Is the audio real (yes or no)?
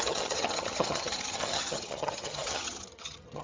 no